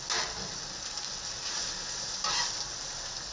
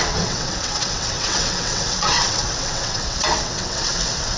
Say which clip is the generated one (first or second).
second